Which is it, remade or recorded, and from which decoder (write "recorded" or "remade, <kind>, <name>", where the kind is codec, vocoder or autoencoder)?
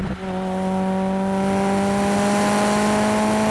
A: recorded